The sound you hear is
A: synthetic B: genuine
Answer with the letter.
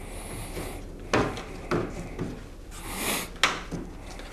B